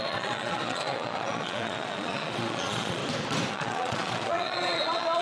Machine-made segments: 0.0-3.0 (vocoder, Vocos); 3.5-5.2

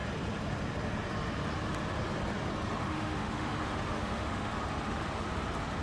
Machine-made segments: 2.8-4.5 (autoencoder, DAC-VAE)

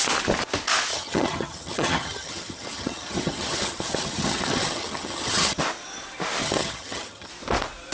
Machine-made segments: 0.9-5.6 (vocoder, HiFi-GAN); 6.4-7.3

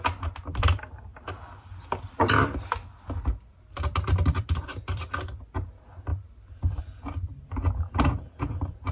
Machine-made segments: none